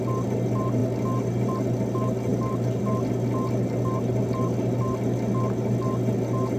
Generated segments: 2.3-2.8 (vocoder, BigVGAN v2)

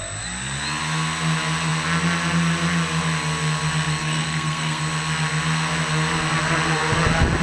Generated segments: 4.0-4.8 (codec, SNAC)